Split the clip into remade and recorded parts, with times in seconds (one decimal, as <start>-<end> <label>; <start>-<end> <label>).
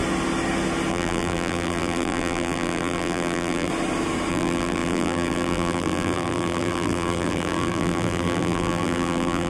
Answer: 0.0-0.9 recorded; 0.9-3.7 remade; 3.7-4.3 recorded; 4.3-9.5 remade